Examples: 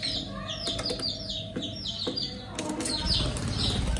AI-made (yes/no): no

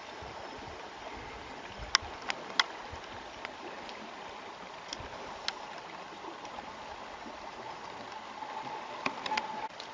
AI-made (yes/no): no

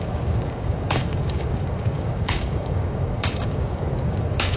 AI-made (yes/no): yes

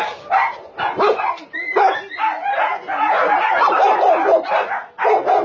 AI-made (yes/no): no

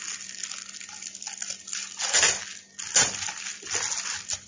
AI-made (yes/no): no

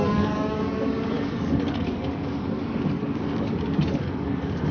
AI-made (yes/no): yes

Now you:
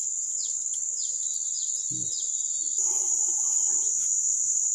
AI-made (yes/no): no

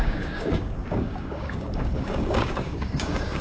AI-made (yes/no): yes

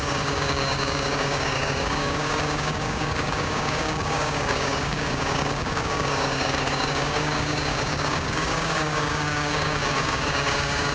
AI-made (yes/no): yes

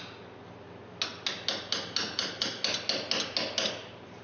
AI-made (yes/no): no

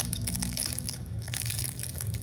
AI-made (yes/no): yes